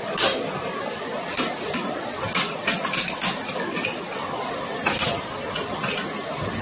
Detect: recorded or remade recorded